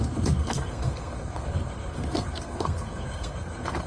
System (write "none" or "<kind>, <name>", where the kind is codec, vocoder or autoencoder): codec, SNAC